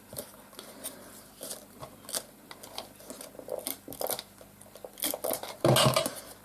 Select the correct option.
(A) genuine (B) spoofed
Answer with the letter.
A